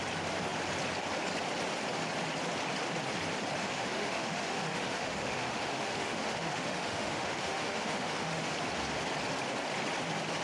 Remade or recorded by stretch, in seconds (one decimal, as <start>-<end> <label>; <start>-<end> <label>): 0.0-3.6 recorded; 3.6-8.5 remade; 8.5-10.4 recorded